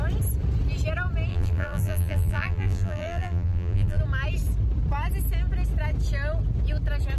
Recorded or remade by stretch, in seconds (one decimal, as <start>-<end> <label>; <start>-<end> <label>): 0.0-1.3 recorded; 1.3-4.0 remade; 4.0-7.2 recorded